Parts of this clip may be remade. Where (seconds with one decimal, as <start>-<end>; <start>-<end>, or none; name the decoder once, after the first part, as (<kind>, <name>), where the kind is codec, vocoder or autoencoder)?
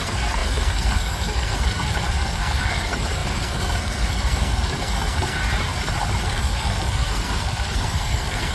0.0-5.4 (codec, SNAC); 6.2-8.5